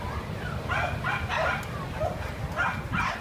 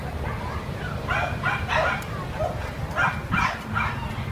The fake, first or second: first